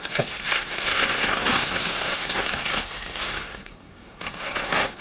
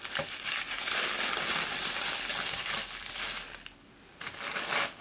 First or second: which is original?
second